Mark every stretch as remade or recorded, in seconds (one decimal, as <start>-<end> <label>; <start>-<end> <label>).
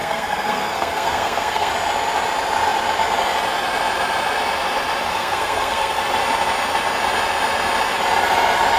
0.0-1.7 remade; 1.7-5.1 recorded; 5.1-6.0 remade; 6.0-8.8 recorded